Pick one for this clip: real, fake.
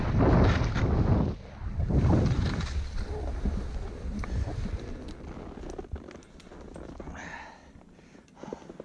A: real